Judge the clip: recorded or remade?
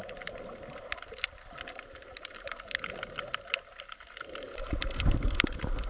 recorded